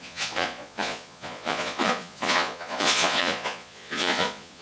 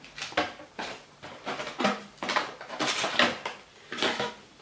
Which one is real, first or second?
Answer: second